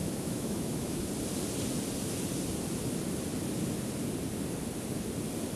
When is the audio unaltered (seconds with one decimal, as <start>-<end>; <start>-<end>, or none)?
1.0-5.6